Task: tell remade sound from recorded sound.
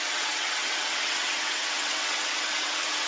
remade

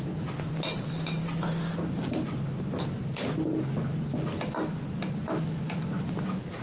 recorded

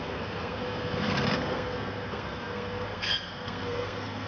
remade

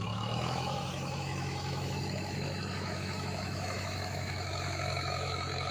remade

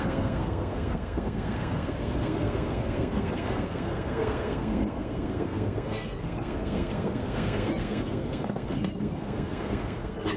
remade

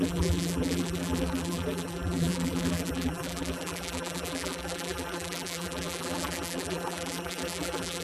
remade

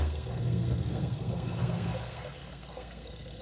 remade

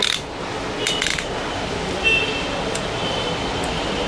recorded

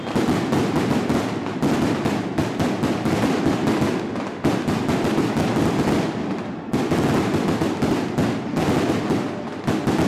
recorded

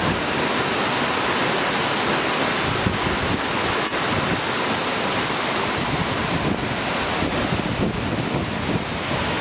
recorded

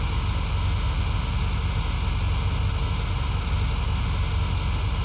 recorded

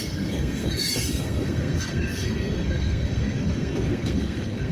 remade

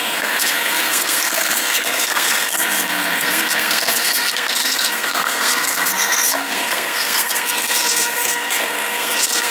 remade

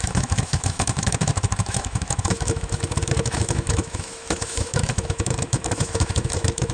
remade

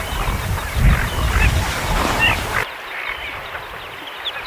remade